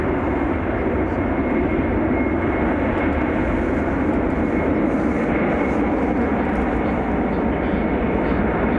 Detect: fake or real real